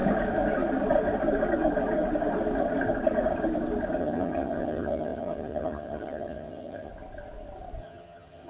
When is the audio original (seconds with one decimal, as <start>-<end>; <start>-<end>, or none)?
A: 0.0-4.0; 6.9-7.8